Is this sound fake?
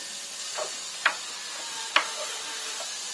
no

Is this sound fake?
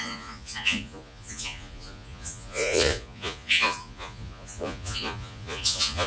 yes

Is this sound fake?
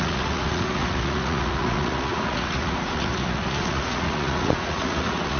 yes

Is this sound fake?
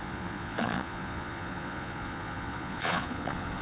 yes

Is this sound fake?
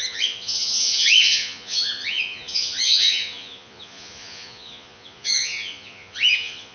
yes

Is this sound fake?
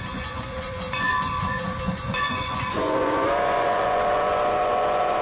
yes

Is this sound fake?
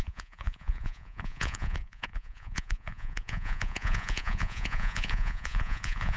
yes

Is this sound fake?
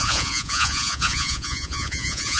yes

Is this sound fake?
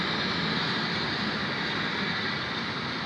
no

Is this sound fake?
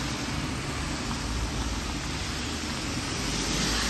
no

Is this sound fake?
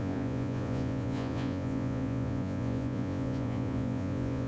yes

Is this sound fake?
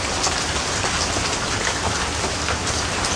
no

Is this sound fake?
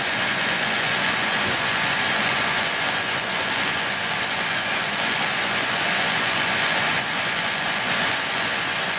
yes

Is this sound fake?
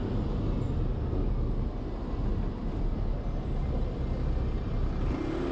no